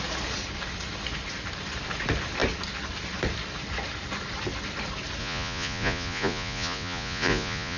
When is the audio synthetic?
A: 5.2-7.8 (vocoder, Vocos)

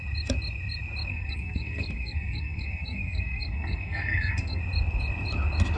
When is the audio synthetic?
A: 1.1-4.6 (codec, SNAC)

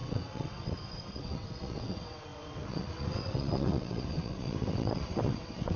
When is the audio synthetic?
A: 0.0-5.8 (vocoder, WaveNeXt)

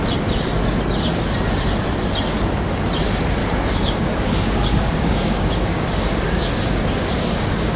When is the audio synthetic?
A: 3.4-7.8 (codec, DAC)

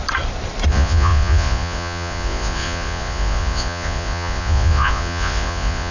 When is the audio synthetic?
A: 0.7-5.9 (vocoder, Vocos)

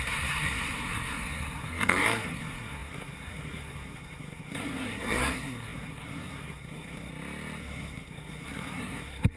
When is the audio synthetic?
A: 0.0-7.1 (codec, SNAC); 7.6-9.4

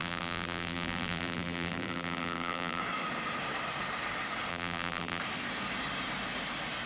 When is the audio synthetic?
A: 0.0-2.8 (vocoder, BigVGAN v2); 4.5-5.2